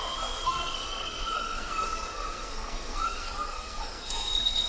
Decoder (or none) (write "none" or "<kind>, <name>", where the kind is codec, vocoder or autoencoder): codec, SNAC